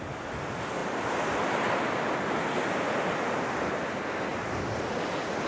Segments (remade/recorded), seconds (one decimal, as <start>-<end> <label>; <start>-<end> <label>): 0.0-5.5 recorded